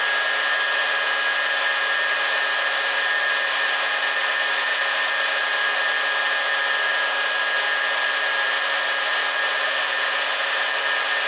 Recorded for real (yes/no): yes